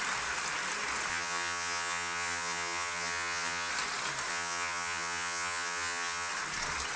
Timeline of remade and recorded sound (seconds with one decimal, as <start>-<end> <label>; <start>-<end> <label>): 0.0-1.1 recorded; 1.1-3.7 remade; 3.7-4.3 recorded; 4.3-6.3 remade; 6.3-7.0 recorded